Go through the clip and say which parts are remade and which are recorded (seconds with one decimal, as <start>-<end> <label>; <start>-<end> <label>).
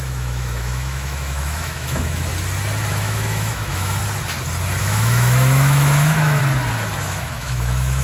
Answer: 0.0-2.3 remade; 2.3-2.9 recorded; 2.9-4.0 remade; 4.0-4.8 recorded; 4.8-6.4 remade; 6.4-7.0 recorded; 7.0-8.0 remade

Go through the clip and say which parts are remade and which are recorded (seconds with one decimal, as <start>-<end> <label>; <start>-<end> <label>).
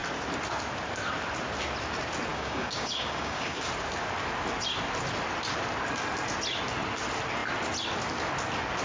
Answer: 0.0-2.3 recorded; 2.3-3.6 remade; 3.6-8.8 recorded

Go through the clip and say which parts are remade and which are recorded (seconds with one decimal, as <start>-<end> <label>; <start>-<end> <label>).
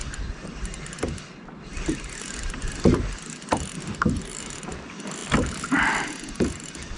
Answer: 0.0-5.2 recorded; 5.2-5.9 remade; 5.9-7.0 recorded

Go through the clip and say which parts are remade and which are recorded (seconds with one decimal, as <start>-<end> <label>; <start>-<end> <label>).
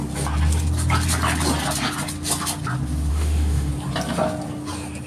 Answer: 0.0-3.1 recorded; 3.1-3.7 remade; 3.7-5.1 recorded